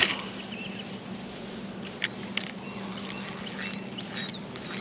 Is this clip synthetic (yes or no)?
no